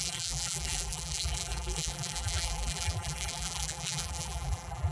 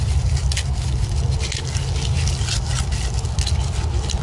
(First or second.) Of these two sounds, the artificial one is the first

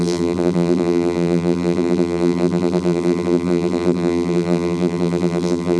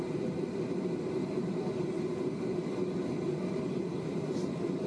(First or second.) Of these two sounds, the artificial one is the first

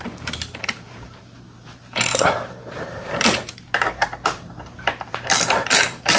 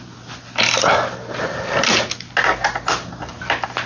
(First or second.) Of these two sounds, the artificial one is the first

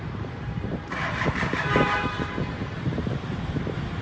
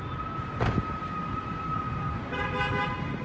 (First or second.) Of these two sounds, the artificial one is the first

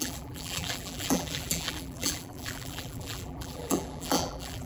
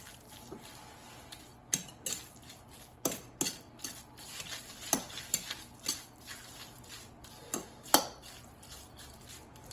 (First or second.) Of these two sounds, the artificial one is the first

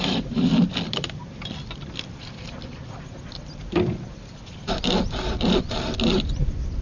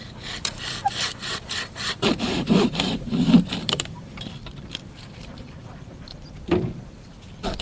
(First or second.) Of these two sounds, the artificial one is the second